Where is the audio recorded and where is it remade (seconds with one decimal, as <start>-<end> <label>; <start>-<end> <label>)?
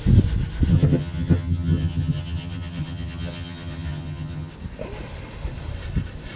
0.0-0.7 recorded; 0.7-4.5 remade; 4.5-6.4 recorded